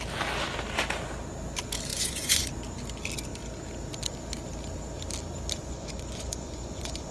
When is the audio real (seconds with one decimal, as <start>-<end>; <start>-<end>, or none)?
0.0-1.9; 2.5-5.6